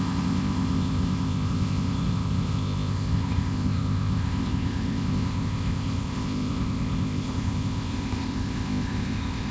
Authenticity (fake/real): fake